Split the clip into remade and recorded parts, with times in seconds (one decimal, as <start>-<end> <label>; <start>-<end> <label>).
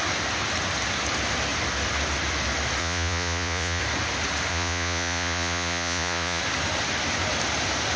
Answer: 0.0-2.8 recorded; 2.8-3.8 remade; 3.8-4.5 recorded; 4.5-6.4 remade; 6.4-8.0 recorded